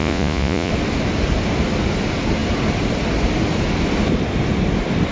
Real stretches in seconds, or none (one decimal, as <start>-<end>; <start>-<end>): 0.7-5.1